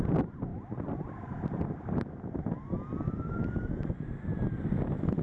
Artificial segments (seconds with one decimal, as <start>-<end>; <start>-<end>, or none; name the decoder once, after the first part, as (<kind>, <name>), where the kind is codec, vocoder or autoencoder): none